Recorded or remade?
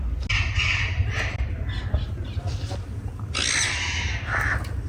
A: recorded